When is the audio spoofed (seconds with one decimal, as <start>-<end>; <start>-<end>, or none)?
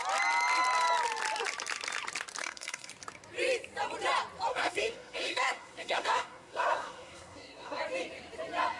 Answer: 2.4-2.9; 4.5-7.8